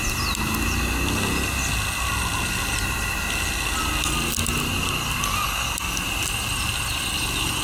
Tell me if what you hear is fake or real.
real